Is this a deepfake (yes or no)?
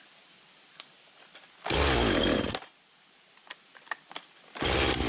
no